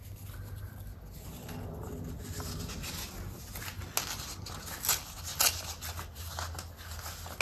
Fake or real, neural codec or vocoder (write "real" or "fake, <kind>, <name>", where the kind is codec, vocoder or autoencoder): real